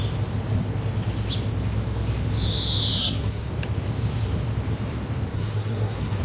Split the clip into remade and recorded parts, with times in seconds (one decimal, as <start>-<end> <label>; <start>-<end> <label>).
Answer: 0.0-3.0 recorded; 3.0-3.5 remade; 3.5-5.3 recorded; 5.3-6.2 remade